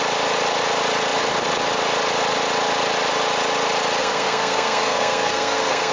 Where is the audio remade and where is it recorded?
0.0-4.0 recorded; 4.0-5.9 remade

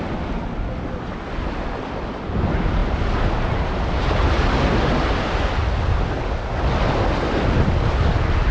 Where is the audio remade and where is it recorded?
0.0-8.5 recorded

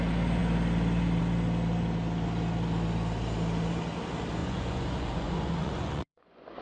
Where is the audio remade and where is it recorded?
0.0-4.4 recorded; 4.4-6.6 remade

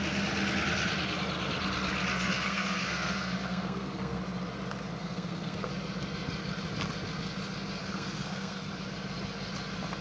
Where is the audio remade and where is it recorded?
0.0-2.1 recorded; 2.1-4.2 remade; 4.2-5.0 recorded; 5.0-5.7 remade; 5.7-7.8 recorded; 7.8-8.7 remade; 8.7-10.0 recorded

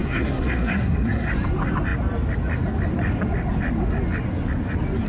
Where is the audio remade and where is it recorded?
0.0-1.3 remade; 1.3-5.1 recorded

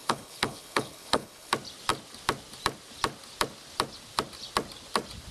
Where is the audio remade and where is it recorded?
0.0-1.5 remade; 1.5-5.3 recorded